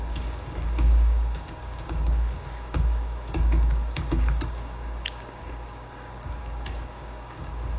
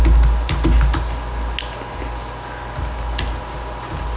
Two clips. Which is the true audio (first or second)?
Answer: second